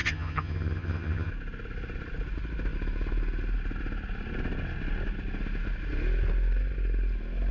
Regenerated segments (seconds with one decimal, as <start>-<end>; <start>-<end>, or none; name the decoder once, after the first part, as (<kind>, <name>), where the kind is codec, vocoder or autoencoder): 0.0-1.3 (vocoder, HiFi-GAN)